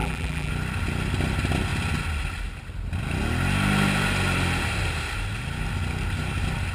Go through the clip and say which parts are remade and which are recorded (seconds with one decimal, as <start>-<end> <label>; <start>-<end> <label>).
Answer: 0.0-0.5 remade; 0.5-6.7 recorded